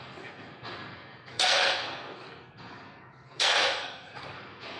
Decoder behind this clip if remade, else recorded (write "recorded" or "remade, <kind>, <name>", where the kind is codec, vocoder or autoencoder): remade, codec, SNAC